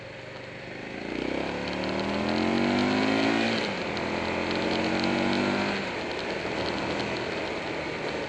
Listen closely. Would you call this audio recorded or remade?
recorded